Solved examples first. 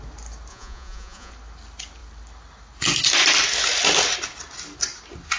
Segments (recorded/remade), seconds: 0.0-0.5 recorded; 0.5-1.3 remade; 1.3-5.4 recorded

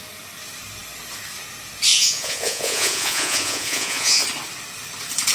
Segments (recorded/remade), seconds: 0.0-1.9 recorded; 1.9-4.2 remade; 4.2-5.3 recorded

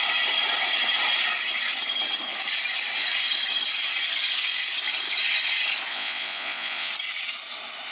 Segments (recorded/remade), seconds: 0.0-5.9 recorded; 5.9-6.9 remade; 6.9-7.9 recorded